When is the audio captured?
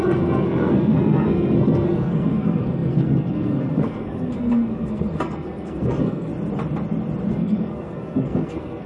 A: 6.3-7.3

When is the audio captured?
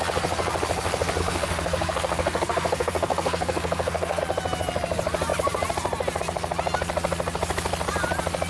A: 0.0-1.2; 4.2-8.5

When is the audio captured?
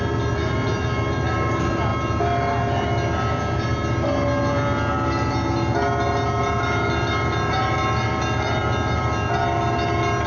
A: 0.0-10.3